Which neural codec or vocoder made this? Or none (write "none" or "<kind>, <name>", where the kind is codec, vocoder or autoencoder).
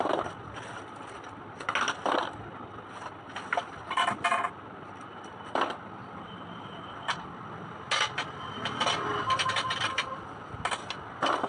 none